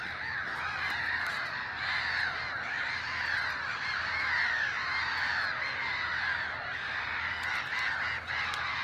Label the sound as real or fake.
real